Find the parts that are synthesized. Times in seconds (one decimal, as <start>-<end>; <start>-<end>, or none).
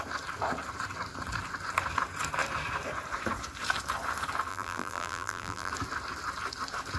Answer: 4.5-5.7